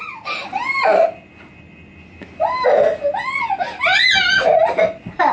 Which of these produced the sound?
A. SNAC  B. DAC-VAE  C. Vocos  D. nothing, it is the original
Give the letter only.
D